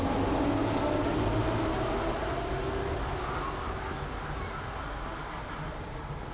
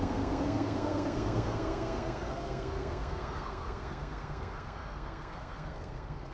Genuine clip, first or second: first